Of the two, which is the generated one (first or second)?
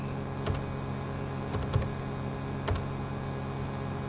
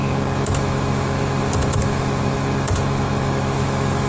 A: second